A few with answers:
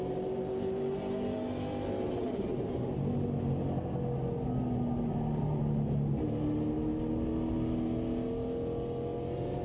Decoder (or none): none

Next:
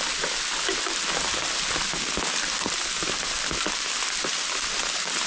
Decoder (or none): none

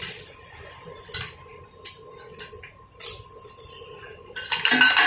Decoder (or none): none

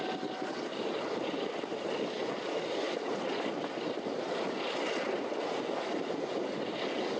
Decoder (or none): none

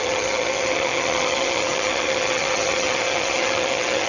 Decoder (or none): vocoder, HiFi-GAN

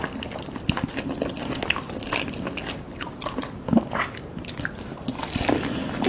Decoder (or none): none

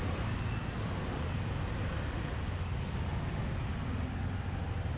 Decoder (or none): none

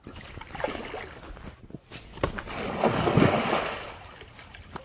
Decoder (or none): none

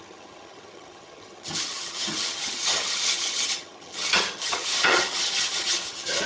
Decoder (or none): vocoder, HiFi-GAN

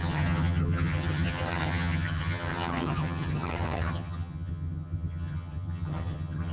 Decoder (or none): vocoder, HiFi-GAN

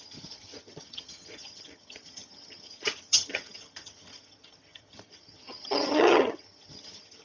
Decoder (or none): vocoder, HiFi-GAN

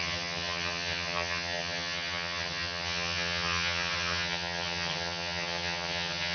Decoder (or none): vocoder, HiFi-GAN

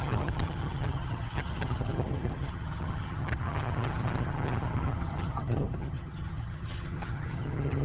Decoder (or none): vocoder, HiFi-GAN